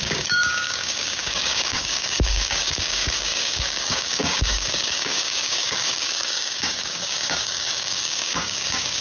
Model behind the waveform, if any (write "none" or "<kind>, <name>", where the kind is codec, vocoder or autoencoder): codec, DAC